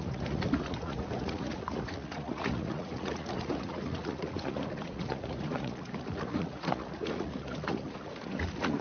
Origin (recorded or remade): remade